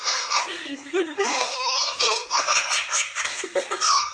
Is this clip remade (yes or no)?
yes